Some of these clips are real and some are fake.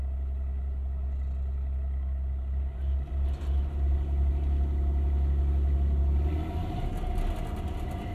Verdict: real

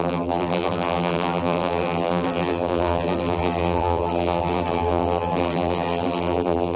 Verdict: fake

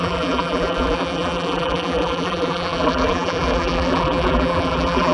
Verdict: fake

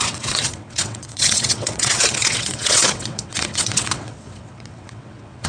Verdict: fake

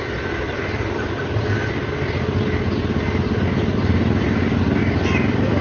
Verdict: real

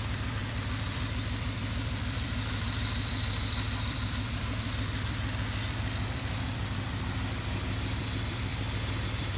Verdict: fake